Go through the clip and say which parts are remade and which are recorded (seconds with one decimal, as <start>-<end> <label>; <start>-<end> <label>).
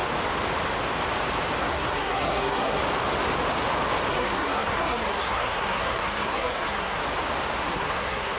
0.0-1.6 recorded; 1.6-2.8 remade; 2.8-4.1 recorded; 4.1-7.0 remade; 7.0-7.6 recorded; 7.6-8.4 remade